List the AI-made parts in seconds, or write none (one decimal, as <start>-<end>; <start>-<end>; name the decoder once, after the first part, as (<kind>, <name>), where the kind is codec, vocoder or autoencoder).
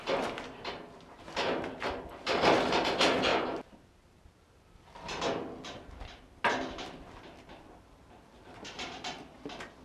none